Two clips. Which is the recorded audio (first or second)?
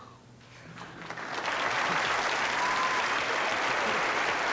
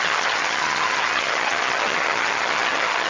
first